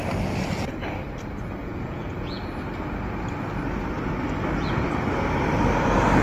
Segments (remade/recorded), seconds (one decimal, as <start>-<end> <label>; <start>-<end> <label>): 0.0-1.6 recorded; 1.6-2.4 remade; 2.4-6.2 recorded